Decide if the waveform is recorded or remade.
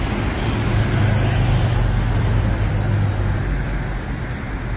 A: recorded